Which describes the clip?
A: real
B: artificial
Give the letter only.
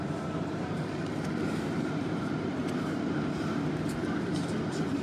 B